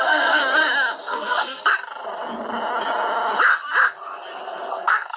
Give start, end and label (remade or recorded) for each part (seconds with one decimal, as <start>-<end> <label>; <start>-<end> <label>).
0.0-0.4 remade; 0.4-1.0 recorded; 1.0-1.6 remade; 1.6-4.7 recorded; 4.7-5.2 remade

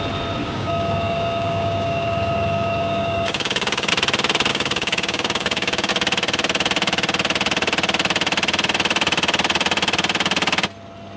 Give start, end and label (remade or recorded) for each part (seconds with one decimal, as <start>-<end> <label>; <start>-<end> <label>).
0.0-0.4 recorded; 0.4-3.9 remade; 3.9-4.5 recorded; 4.5-5.9 remade; 5.9-11.2 recorded